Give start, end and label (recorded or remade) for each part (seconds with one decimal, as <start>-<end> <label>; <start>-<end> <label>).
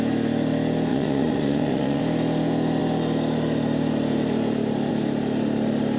0.0-0.9 recorded; 0.9-2.0 remade; 2.0-6.0 recorded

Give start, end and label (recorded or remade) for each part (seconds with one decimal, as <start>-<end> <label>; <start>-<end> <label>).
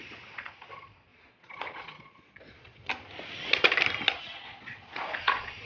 0.0-2.9 remade; 2.9-4.2 recorded; 4.2-5.7 remade